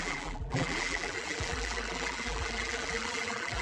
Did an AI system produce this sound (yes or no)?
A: yes